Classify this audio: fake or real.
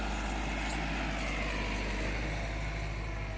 real